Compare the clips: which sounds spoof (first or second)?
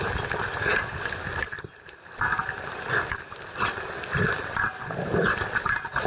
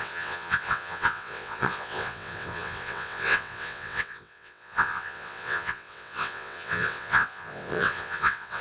second